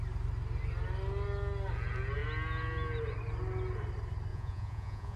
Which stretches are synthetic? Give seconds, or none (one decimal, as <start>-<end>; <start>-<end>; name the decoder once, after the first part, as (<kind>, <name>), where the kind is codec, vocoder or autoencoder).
4.3-5.2 (vocoder, Vocos)